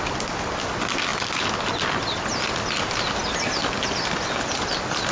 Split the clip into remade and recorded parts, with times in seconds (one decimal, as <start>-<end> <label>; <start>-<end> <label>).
0.0-5.1 recorded